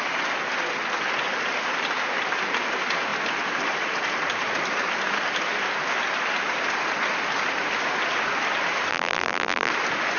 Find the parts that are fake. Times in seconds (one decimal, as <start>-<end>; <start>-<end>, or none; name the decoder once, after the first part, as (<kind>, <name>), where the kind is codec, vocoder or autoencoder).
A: 8.9-9.7 (vocoder, BigVGAN v2)